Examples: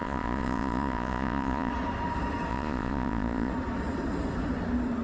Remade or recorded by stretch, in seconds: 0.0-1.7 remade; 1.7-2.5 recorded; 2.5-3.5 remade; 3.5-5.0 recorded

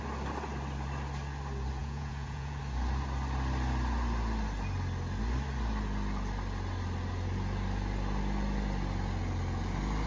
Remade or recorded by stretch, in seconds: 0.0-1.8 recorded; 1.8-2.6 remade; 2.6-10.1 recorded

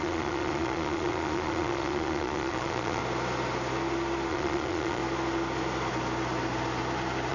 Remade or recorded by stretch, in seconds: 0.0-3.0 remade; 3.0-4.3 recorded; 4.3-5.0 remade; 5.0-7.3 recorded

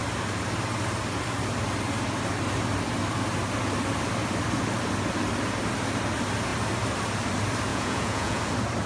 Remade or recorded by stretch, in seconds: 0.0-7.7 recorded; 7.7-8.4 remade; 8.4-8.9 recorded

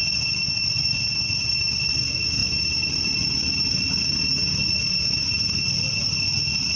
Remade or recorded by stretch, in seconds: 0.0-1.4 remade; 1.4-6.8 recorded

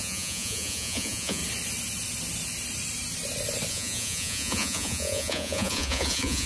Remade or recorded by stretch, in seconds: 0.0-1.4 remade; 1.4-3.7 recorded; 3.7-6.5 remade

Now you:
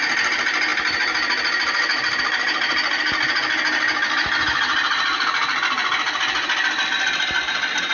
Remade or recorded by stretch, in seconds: 0.0-7.9 recorded

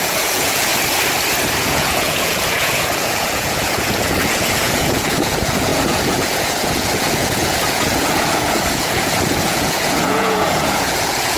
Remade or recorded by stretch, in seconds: 0.0-0.7 remade; 0.7-1.6 recorded; 1.6-11.4 remade